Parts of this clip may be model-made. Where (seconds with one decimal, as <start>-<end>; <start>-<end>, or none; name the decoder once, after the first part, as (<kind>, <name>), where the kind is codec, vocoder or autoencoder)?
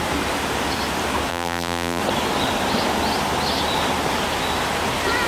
1.3-2.0 (vocoder, BigVGAN v2)